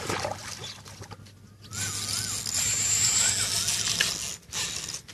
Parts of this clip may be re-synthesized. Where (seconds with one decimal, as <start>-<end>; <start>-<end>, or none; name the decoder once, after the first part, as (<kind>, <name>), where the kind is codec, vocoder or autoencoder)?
none

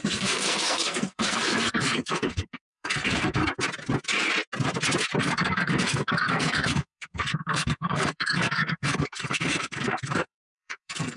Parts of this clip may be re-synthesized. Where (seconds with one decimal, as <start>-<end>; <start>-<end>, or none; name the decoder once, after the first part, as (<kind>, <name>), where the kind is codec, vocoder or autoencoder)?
0.0-3.4 (codec, SNAC); 5.2-11.2

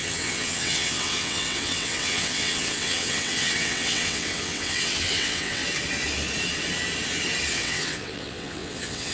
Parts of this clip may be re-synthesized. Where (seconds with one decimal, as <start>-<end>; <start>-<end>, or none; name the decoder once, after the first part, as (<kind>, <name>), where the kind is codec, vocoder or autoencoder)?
0.0-5.6 (vocoder, WaveNeXt); 7.5-9.1

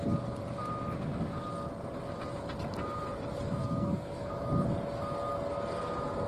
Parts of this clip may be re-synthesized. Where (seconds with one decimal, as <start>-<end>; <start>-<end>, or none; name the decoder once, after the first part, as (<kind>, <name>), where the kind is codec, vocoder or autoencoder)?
3.6-4.3 (codec, SNAC)

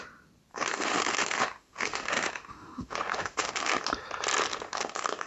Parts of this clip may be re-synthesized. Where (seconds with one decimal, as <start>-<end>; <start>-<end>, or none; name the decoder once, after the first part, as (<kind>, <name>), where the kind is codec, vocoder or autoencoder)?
0.5-3.7 (autoencoder, DAC-VAE); 4.5-5.3

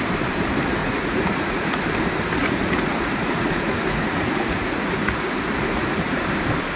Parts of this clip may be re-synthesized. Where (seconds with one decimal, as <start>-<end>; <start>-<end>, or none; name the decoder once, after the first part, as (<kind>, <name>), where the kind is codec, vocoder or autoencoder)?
0.8-1.8 (vocoder, Vocos); 2.4-6.2

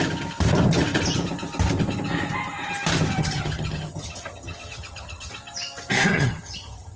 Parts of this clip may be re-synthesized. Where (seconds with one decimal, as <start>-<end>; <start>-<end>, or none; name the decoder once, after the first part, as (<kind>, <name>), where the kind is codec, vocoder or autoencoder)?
3.2-5.3 (vocoder, HiFi-GAN); 6.1-7.0

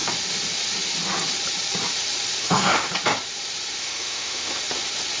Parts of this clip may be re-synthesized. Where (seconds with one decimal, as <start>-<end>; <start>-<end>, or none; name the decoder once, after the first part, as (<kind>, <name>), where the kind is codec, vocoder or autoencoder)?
2.4-2.9 (autoencoder, DAC-VAE); 3.8-4.6